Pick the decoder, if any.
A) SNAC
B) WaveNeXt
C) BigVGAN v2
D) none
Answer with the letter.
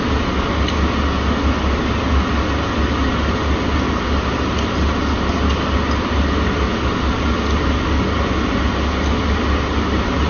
D